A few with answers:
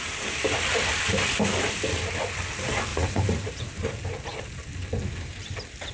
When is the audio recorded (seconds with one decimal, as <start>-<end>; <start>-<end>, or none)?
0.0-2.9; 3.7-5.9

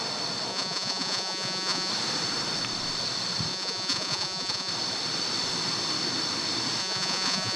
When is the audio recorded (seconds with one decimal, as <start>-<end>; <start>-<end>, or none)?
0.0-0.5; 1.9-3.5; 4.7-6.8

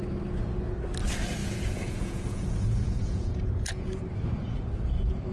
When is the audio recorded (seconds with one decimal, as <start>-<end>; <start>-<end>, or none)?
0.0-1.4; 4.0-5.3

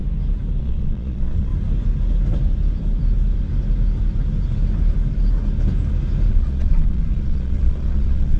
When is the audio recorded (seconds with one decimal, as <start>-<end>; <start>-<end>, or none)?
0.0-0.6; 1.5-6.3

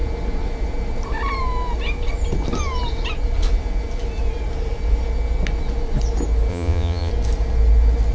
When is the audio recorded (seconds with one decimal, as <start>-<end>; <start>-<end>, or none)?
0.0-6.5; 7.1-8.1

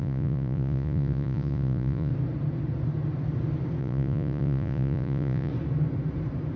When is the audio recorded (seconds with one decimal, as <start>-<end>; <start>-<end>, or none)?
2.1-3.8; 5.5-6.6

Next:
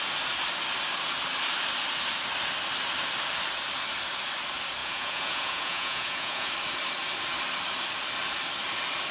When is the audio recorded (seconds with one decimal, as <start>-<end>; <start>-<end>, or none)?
0.0-4.8; 6.5-9.1